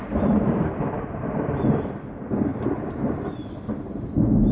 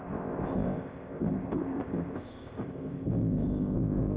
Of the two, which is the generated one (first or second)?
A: second